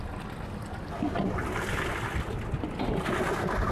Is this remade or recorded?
recorded